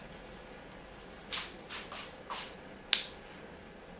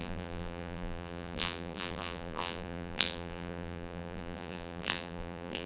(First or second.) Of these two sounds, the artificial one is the second